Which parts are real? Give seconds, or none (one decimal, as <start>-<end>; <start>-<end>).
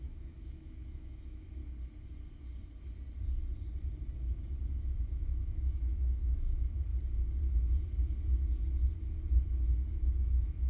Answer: 1.6-5.0; 6.9-10.1